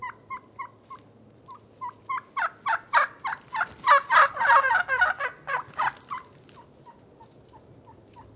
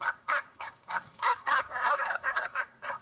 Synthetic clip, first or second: second